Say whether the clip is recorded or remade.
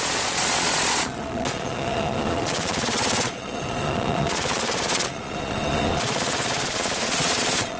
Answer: remade